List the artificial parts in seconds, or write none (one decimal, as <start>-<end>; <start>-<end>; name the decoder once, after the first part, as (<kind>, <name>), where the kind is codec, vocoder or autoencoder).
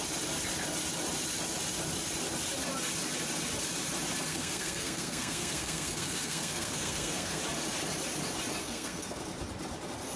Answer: 4.3-7.4 (codec, SNAC); 8.6-9.2